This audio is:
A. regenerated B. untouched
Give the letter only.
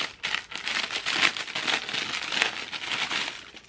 B